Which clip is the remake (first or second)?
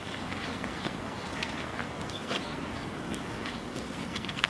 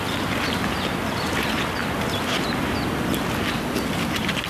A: first